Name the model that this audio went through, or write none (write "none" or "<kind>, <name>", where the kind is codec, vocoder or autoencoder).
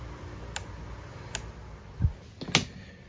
none